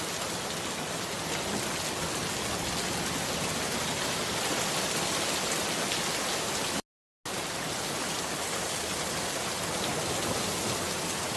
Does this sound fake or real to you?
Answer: real